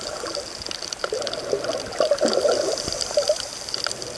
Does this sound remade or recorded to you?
recorded